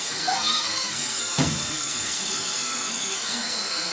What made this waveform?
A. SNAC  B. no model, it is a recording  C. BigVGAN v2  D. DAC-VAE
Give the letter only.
A